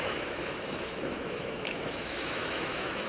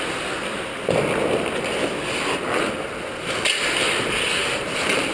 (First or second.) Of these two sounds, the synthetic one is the first